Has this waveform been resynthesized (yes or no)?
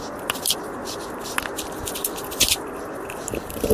no